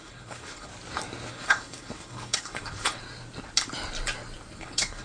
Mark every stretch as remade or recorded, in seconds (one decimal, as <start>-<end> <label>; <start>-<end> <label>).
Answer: 0.0-0.7 remade; 0.7-1.3 recorded; 1.3-3.0 remade; 3.0-4.5 recorded; 4.5-5.0 remade